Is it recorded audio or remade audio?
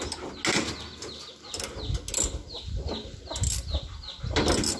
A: recorded